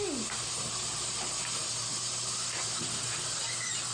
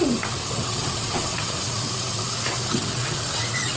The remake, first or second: second